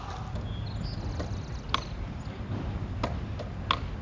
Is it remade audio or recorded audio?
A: recorded